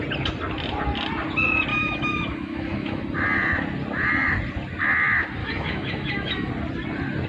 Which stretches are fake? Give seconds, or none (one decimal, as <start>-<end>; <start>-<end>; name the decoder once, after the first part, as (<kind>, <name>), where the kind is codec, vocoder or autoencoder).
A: 1.7-3.0 (autoencoder, DAC-VAE); 5.4-6.5